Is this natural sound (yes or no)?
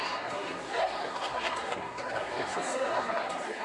no